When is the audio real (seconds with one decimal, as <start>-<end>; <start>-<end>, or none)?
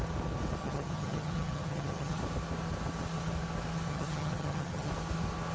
0.0-0.6; 2.2-3.9; 4.9-5.5